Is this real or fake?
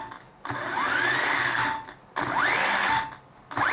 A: real